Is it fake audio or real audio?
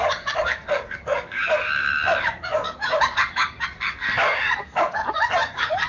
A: fake